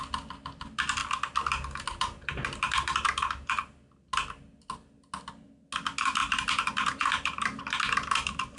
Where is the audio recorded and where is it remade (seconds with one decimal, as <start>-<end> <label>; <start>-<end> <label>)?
0.0-6.2 recorded; 6.2-7.6 remade; 7.6-8.6 recorded